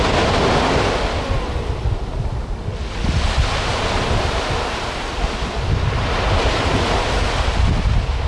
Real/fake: real